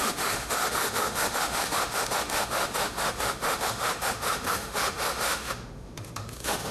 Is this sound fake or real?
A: fake